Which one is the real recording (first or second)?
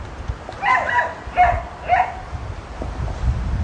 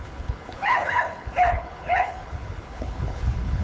first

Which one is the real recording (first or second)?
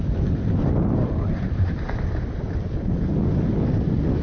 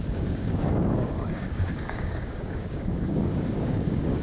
first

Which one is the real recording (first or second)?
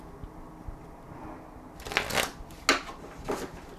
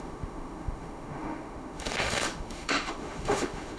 first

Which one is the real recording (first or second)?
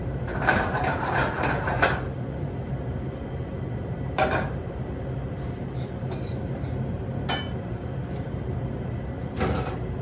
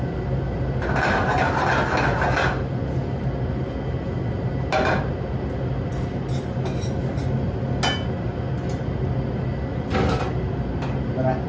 second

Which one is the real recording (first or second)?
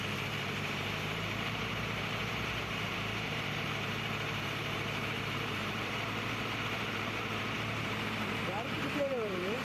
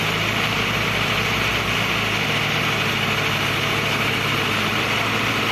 second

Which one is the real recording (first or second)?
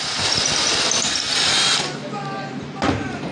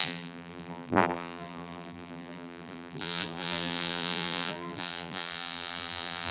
first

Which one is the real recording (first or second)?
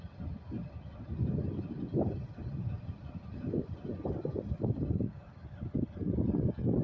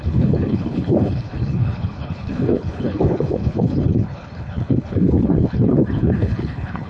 first